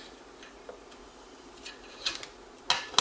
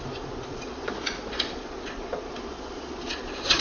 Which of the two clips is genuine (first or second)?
first